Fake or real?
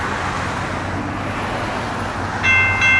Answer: real